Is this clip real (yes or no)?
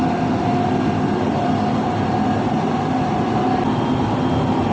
yes